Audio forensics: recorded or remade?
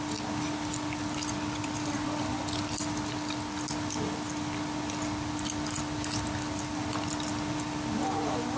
recorded